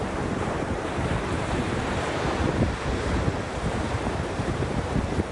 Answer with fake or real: fake